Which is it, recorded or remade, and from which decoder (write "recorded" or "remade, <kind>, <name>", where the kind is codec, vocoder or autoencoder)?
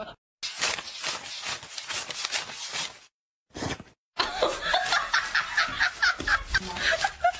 recorded